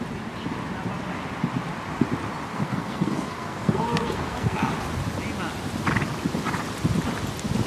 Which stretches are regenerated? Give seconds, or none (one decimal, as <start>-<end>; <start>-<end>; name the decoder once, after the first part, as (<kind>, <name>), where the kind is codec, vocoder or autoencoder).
2.5-4.7 (codec, SNAC)